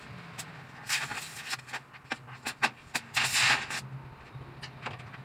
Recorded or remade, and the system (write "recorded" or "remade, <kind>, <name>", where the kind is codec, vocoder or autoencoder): recorded